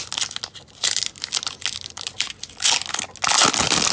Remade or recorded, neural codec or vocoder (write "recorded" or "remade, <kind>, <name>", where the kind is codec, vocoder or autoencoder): recorded